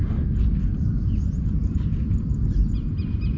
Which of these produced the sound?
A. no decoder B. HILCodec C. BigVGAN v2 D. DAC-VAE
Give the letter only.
A